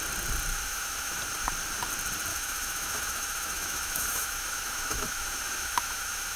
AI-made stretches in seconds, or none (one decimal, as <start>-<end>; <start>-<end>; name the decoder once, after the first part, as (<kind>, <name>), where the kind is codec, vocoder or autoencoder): 0.5-1.2 (autoencoder, DAC-VAE); 2.3-6.4